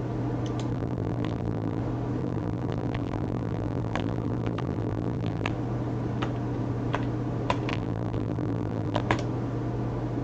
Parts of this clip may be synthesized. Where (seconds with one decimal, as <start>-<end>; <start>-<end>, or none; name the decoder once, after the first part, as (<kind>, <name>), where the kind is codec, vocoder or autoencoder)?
0.7-1.8 (vocoder, BigVGAN v2); 2.2-5.5; 7.7-9.0